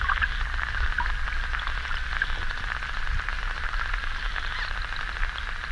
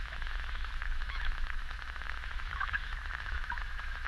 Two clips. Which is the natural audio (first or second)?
first